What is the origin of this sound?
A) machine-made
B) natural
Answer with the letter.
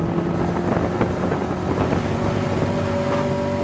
B